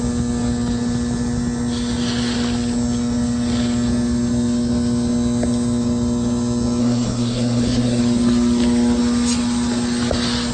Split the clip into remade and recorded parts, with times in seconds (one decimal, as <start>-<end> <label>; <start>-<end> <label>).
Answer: 0.0-6.8 recorded; 6.8-8.0 remade; 8.0-10.5 recorded